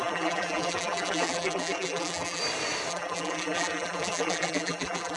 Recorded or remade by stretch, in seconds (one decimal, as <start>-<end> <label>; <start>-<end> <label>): 0.0-2.4 remade; 2.4-2.9 recorded; 2.9-5.2 remade